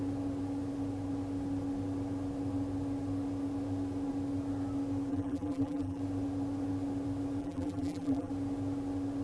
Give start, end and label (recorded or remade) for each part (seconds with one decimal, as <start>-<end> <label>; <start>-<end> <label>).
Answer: 0.0-5.1 recorded; 5.1-6.0 remade; 6.0-7.4 recorded; 7.4-8.3 remade; 8.3-9.2 recorded